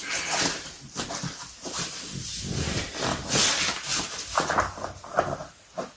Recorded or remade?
recorded